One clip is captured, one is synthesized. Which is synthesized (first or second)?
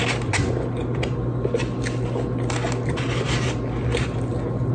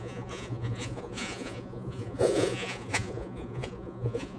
second